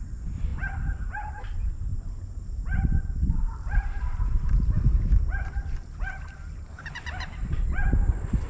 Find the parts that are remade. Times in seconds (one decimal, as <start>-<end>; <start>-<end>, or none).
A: 0.0-0.5; 1.3-8.5